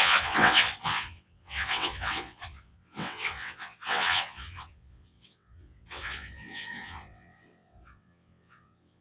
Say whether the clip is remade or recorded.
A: remade